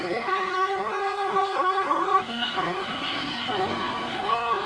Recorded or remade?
remade